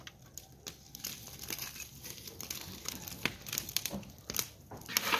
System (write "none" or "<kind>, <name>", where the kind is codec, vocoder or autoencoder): none